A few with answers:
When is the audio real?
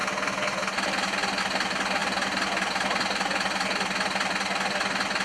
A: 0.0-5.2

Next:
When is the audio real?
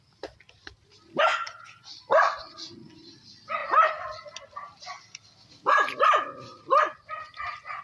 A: 0.0-7.8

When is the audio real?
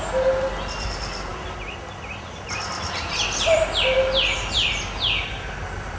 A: 0.0-6.0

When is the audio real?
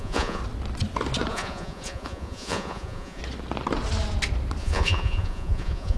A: 0.4-1.3; 3.2-4.6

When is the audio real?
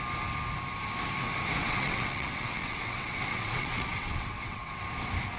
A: 0.0-1.6; 4.8-5.4